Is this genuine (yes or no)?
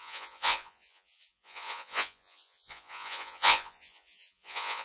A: no